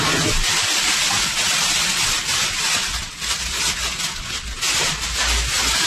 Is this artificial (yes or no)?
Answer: no